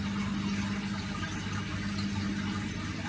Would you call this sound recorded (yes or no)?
yes